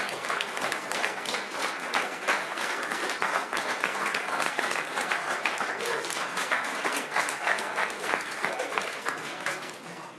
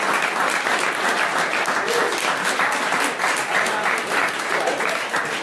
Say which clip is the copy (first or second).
first